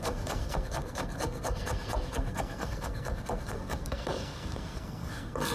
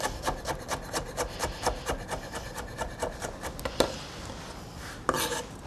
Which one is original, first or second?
second